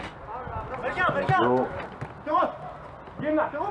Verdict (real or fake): real